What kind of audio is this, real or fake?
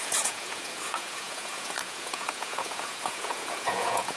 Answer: fake